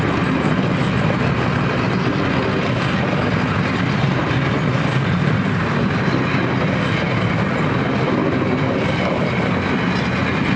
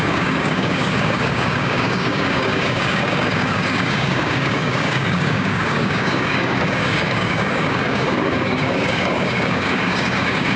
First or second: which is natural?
first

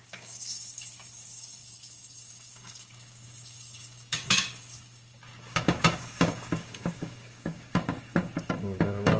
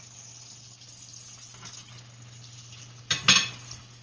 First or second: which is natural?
second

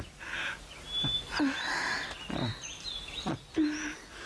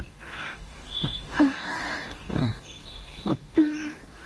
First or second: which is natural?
first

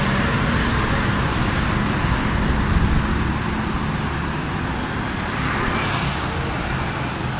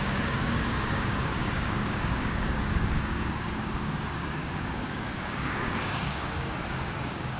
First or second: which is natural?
first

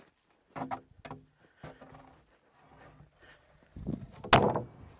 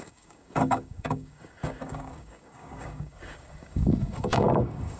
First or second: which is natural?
first